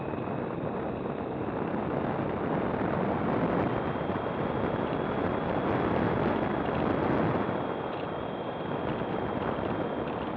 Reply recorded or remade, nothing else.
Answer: recorded